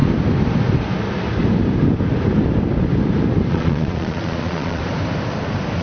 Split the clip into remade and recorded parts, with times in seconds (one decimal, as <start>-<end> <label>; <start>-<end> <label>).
0.0-3.5 recorded; 3.5-4.8 remade; 4.8-5.8 recorded